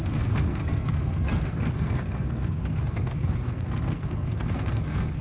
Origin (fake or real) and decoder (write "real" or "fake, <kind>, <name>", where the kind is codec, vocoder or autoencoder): fake, codec, SNAC